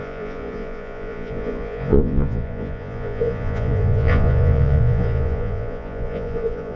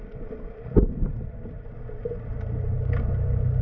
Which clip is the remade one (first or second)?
first